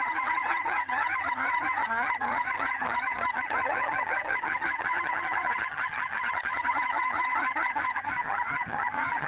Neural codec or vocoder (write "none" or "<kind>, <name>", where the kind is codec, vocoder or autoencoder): vocoder, HiFi-GAN